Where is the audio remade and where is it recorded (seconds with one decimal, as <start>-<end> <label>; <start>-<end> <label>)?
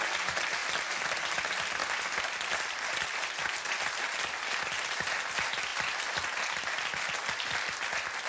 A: 0.0-0.6 recorded; 0.6-1.2 remade; 1.2-1.8 recorded; 1.8-3.5 remade; 3.5-8.3 recorded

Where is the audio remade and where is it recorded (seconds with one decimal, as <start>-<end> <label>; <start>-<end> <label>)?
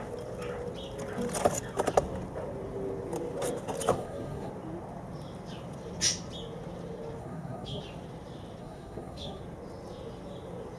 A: 0.0-3.9 recorded; 3.9-4.5 remade; 4.5-7.2 recorded; 7.2-7.8 remade; 7.8-8.6 recorded; 8.6-9.4 remade; 9.4-10.8 recorded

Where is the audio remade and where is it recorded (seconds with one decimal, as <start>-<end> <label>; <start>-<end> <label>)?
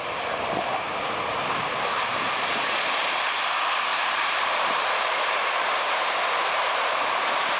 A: 0.0-3.9 recorded; 3.9-7.6 remade